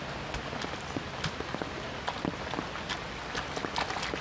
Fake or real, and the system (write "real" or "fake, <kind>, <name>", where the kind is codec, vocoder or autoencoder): real